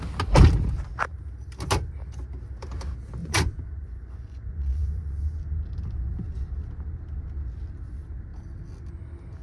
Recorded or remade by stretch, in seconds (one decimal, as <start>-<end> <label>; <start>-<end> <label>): 0.0-3.2 recorded; 3.2-5.5 remade; 5.5-9.4 recorded